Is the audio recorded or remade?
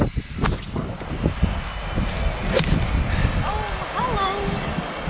recorded